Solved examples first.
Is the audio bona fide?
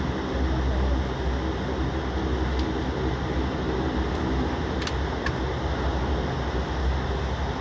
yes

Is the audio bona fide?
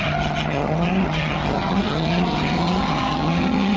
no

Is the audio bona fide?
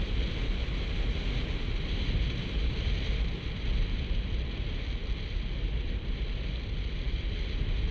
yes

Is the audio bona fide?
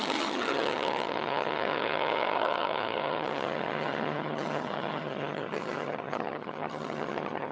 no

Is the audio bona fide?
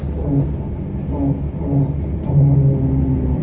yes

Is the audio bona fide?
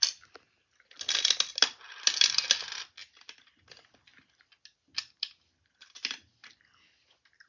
yes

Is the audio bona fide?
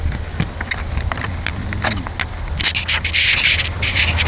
yes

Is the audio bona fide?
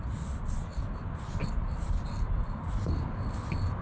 yes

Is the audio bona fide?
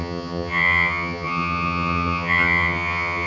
no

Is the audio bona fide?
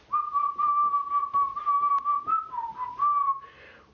yes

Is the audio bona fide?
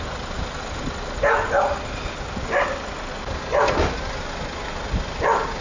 yes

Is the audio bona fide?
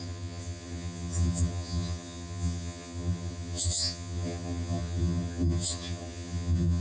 no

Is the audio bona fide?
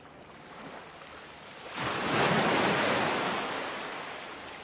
yes